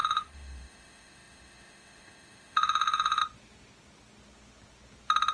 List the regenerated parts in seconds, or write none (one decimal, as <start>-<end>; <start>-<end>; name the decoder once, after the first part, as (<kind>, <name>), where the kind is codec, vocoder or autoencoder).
0.0-3.2 (autoencoder, DAC-VAE)